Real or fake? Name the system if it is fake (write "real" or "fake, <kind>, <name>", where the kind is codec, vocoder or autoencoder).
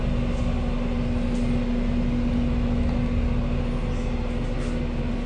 real